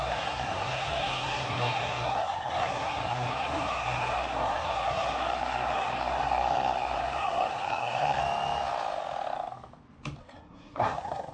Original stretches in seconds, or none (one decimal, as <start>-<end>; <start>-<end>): 8.2-10.2